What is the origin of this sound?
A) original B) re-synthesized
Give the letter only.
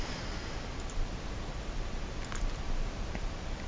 A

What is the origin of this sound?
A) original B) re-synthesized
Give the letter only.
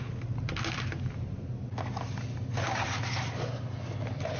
A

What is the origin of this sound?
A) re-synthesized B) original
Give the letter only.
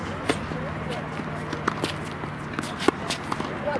B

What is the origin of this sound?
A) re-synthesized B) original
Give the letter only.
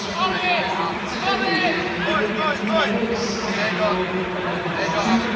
A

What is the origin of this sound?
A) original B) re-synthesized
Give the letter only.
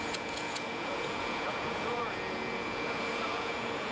B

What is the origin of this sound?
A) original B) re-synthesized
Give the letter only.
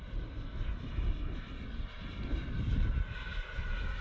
A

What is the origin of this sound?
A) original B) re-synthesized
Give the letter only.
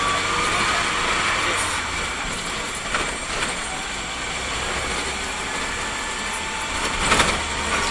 A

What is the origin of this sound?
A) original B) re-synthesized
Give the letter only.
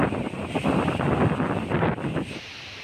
A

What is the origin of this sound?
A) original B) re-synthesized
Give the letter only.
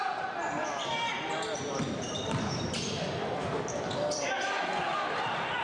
B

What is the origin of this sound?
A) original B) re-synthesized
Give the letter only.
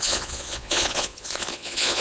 B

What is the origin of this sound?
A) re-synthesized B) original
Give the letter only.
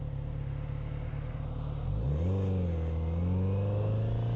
B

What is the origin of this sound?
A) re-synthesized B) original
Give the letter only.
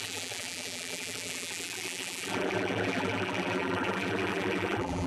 A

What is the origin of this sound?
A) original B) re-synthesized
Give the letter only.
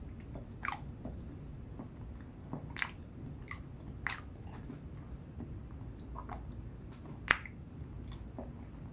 A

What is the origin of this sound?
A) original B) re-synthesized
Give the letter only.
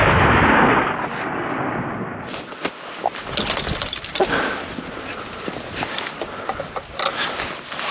A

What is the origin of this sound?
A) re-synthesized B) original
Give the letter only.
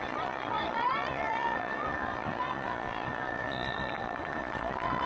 A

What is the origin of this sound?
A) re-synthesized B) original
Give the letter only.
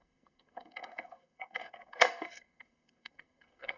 A